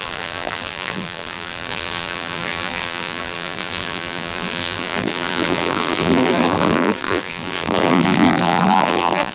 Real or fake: fake